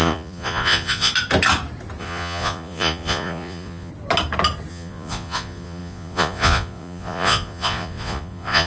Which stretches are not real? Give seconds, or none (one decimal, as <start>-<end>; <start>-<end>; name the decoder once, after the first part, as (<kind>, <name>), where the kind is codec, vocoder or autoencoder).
0.0-1.1 (vocoder, Vocos); 2.0-3.9; 4.7-8.7